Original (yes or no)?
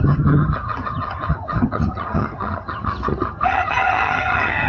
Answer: no